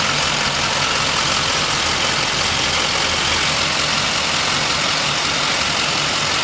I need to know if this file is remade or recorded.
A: recorded